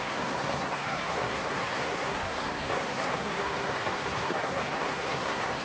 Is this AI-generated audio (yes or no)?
yes